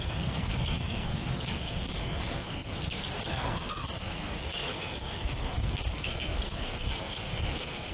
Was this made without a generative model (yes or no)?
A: no